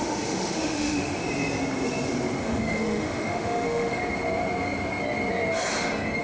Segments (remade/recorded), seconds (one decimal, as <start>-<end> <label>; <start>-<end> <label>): 0.0-1.2 remade; 1.2-2.4 recorded; 2.4-4.0 remade; 4.0-6.2 recorded

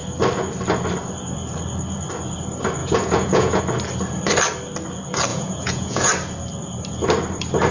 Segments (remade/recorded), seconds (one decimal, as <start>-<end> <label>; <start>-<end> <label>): 0.0-2.8 recorded; 2.8-3.6 remade; 3.6-5.3 recorded; 5.3-6.1 remade; 6.1-7.7 recorded

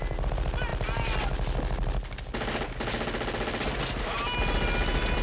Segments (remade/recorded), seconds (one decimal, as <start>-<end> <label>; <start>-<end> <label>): 0.0-5.2 recorded

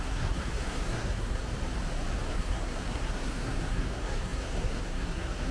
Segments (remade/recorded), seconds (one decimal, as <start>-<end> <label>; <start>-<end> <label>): 0.0-1.4 remade; 1.4-2.3 recorded; 2.3-5.5 remade

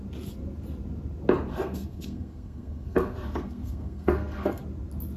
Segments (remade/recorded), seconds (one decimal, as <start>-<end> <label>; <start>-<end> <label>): 0.0-1.5 recorded; 1.5-4.6 remade; 4.6-5.2 recorded

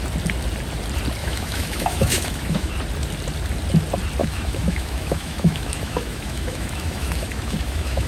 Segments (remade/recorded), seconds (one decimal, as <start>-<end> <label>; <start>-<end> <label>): 0.0-1.2 recorded; 1.2-2.7 remade; 2.7-4.2 recorded; 4.2-8.1 remade

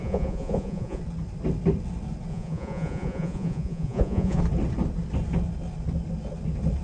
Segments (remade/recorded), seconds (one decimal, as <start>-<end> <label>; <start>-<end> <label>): 0.0-1.0 remade; 1.0-2.3 recorded; 2.3-4.4 remade; 4.4-6.8 recorded

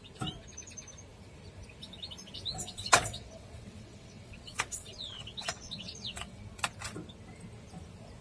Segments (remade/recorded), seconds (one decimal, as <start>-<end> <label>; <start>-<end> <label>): 0.0-2.6 recorded; 2.6-6.4 remade; 6.4-8.2 recorded